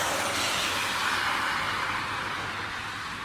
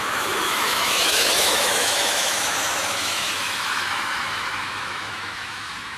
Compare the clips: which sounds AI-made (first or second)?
second